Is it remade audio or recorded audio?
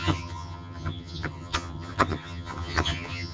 remade